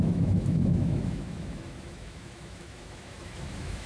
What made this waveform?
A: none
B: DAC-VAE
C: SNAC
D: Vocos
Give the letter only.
B